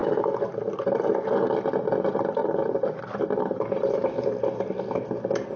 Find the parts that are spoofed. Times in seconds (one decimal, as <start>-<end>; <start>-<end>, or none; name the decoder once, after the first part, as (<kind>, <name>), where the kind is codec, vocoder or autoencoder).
0.0-0.5 (autoencoder, DAC-VAE)